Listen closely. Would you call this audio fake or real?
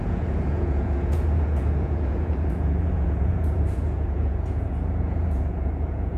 fake